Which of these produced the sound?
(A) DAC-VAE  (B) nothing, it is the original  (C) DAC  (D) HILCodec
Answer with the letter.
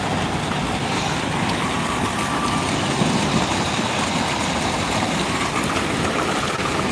B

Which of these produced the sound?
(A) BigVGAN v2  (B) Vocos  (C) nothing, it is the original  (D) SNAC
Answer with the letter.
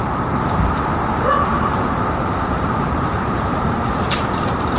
A